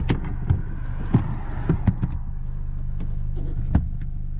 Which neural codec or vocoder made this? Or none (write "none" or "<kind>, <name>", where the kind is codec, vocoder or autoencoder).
none